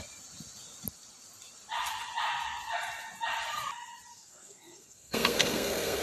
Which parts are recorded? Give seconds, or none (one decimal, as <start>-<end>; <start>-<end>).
0.0-4.1